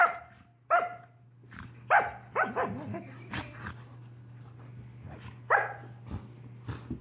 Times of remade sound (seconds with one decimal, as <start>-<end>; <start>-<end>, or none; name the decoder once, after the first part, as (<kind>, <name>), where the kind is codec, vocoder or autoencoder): none

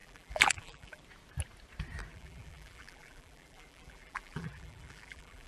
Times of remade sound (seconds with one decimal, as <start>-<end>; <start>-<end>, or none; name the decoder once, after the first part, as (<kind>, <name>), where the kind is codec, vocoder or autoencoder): 0.0-1.0 (vocoder, BigVGAN v2); 2.1-5.5

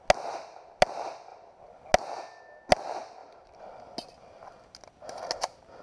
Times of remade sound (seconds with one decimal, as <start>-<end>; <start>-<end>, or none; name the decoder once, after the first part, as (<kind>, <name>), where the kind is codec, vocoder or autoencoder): none

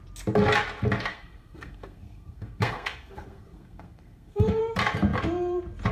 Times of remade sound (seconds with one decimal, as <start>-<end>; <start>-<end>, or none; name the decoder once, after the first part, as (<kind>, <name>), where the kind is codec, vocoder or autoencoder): 1.1-4.6 (codec, SNAC)

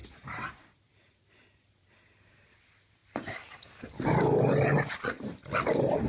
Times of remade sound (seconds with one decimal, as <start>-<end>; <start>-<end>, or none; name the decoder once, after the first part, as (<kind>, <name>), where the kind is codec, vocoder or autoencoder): 0.0-1.9 (vocoder, BigVGAN v2)

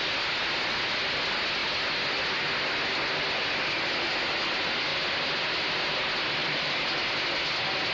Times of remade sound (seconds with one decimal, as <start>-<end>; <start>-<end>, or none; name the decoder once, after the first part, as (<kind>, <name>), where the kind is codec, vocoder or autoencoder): none